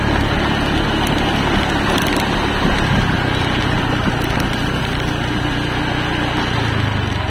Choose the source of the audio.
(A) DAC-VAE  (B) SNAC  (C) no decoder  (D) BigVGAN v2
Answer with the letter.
C